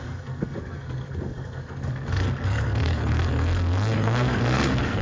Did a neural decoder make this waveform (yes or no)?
yes